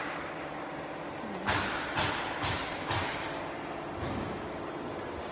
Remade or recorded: recorded